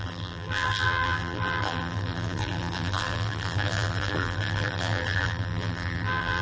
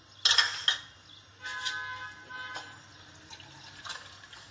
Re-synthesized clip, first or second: first